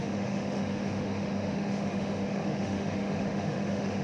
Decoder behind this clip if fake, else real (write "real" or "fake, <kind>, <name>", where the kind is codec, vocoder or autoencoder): fake, autoencoder, DAC-VAE